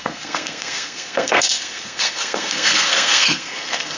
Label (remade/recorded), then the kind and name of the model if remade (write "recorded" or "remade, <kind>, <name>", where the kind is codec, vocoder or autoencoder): remade, codec, SNAC